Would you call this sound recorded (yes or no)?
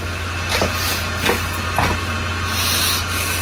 yes